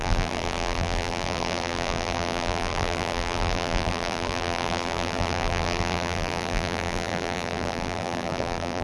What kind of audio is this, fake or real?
fake